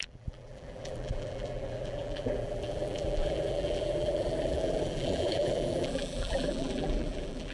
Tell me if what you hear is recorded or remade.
remade